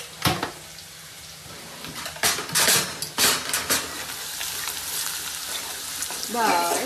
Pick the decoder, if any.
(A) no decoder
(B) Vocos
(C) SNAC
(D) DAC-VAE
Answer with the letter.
A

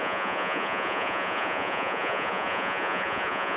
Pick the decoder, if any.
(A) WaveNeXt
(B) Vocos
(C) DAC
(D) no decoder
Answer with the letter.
B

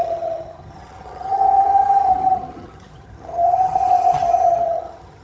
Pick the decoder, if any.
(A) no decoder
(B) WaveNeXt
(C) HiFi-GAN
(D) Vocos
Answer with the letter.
C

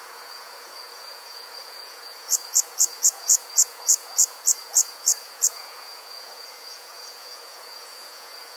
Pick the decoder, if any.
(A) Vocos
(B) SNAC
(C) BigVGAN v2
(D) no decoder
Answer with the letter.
A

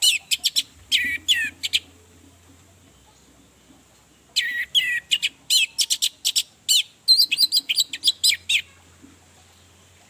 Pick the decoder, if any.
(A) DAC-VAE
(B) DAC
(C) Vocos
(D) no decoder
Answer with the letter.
D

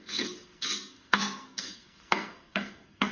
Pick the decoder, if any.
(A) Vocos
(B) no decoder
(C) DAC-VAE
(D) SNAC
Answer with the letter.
D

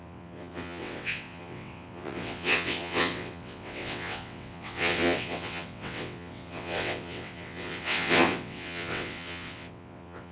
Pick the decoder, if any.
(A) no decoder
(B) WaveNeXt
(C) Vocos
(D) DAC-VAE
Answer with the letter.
B